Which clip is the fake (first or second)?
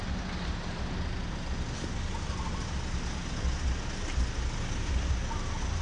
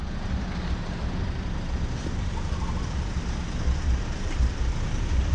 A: second